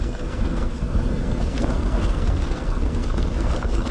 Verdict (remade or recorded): remade